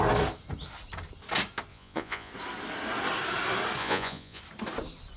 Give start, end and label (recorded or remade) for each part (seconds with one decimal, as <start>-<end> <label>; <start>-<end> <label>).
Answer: 0.0-1.7 recorded; 1.7-2.3 remade; 2.3-3.8 recorded; 3.8-4.4 remade; 4.4-5.2 recorded